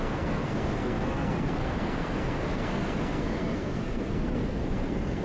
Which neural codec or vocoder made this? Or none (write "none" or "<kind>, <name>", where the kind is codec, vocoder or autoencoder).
codec, SNAC